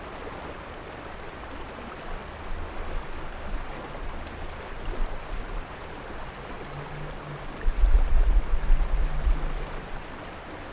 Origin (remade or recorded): recorded